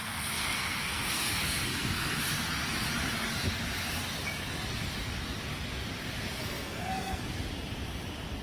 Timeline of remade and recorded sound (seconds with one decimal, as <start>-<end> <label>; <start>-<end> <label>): 0.0-2.2 remade; 2.2-6.4 recorded; 6.4-7.2 remade; 7.2-8.4 recorded